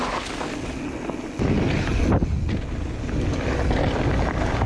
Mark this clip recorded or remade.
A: recorded